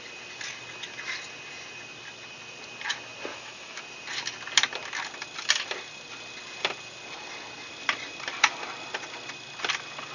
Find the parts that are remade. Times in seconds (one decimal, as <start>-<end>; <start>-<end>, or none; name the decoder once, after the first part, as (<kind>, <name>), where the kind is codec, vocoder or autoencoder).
3.3-3.8 (autoencoder, DAC-VAE)